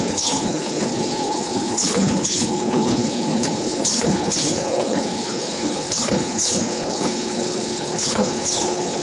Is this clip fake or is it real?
fake